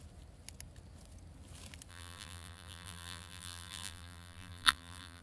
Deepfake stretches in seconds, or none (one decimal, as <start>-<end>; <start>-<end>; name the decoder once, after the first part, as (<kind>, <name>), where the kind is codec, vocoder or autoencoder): 1.9-5.2 (vocoder, BigVGAN v2)